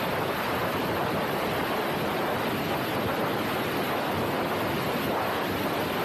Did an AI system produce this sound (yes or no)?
no